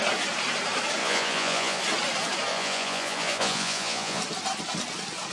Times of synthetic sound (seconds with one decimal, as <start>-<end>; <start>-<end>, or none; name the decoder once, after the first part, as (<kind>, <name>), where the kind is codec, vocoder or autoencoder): 1.0-1.8 (vocoder, Vocos); 2.5-4.2